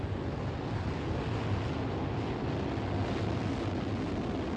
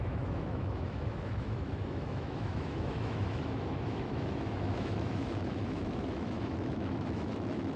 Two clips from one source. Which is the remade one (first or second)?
second